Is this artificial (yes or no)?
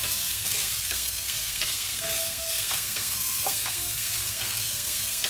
yes